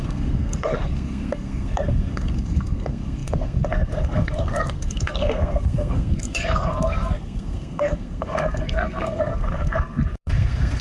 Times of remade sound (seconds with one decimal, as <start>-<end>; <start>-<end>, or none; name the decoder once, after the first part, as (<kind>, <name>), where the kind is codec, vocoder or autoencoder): 0.0-10.8 (codec, SNAC)